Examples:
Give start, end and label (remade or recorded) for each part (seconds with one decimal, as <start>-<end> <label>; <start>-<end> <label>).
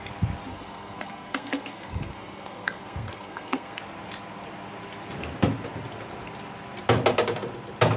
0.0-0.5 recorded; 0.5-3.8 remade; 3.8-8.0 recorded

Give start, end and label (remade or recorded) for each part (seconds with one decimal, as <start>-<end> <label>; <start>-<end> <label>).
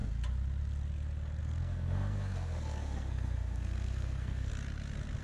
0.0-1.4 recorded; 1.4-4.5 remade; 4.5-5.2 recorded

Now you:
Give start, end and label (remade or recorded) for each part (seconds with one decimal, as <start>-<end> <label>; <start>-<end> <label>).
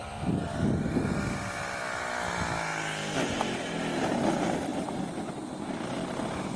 0.0-6.6 recorded